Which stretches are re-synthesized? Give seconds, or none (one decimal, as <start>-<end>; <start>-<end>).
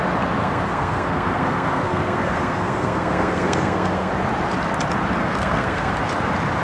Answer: 0.4-4.1; 5.2-5.9